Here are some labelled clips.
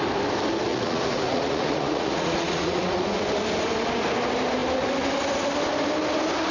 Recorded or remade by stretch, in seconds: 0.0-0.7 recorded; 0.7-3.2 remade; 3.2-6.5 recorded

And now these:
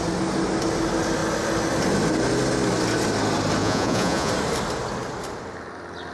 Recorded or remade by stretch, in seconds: 0.0-3.6 recorded; 3.6-4.3 remade; 4.3-6.1 recorded

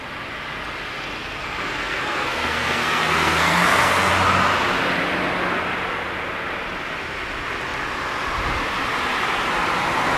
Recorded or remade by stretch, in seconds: 0.0-1.2 recorded; 1.2-4.1 remade; 4.1-10.2 recorded

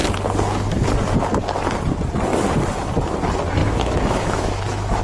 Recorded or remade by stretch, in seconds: 0.0-3.6 recorded; 3.6-5.0 remade